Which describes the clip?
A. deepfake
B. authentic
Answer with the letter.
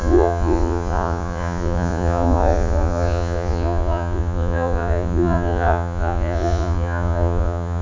A